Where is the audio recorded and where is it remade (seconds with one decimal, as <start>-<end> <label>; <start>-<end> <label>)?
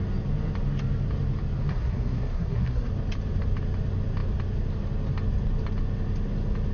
0.0-1.7 recorded; 1.7-2.9 remade; 2.9-6.7 recorded